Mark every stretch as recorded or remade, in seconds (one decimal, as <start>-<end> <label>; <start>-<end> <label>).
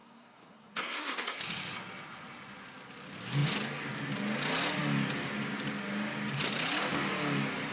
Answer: 0.0-1.4 remade; 1.4-7.7 recorded